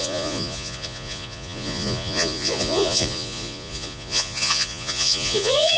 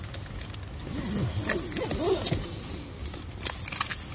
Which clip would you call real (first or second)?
second